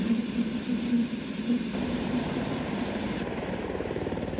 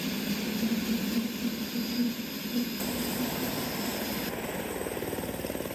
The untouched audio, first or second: second